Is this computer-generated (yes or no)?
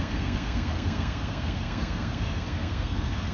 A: yes